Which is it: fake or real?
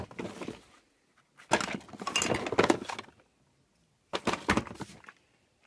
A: real